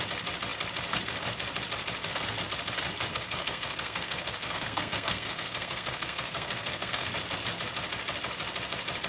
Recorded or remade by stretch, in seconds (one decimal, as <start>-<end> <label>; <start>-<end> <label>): 0.0-3.1 recorded; 3.1-7.1 remade; 7.1-9.1 recorded